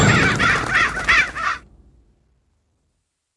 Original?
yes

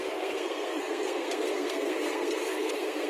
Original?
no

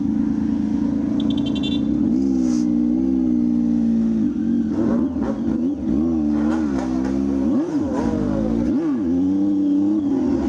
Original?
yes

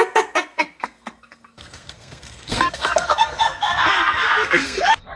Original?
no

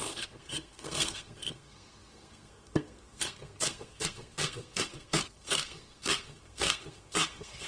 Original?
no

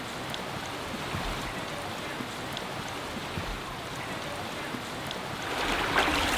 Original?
yes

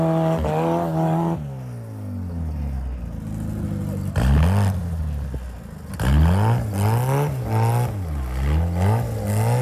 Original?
yes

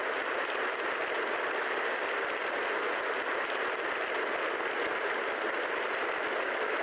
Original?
yes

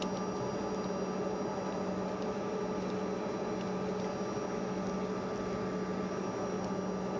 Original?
yes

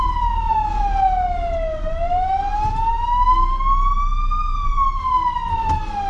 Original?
yes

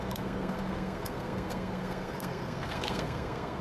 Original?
no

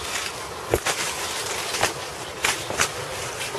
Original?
yes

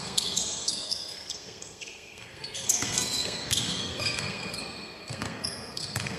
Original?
no